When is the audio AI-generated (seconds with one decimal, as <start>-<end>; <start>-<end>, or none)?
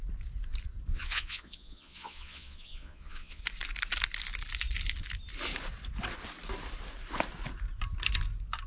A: 0.9-3.4